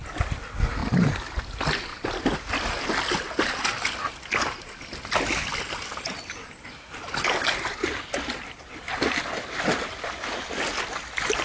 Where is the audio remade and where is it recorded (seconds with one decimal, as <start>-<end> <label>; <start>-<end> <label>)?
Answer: 0.0-11.4 recorded